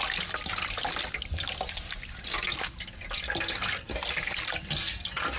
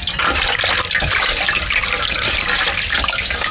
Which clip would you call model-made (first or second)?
second